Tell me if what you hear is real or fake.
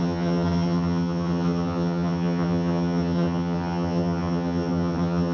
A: fake